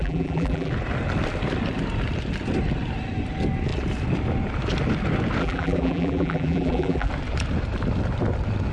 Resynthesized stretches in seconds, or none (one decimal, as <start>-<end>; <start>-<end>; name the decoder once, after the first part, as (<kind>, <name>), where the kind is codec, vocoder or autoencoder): 0.0-0.7 (vocoder, BigVGAN v2); 5.4-7.1